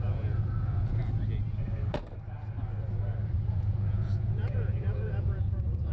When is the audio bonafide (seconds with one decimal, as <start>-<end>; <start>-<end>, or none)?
1.0-3.5